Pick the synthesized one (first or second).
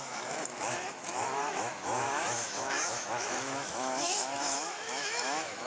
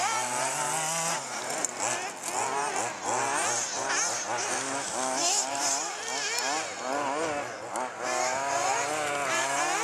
first